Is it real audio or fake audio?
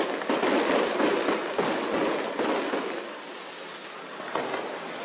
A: real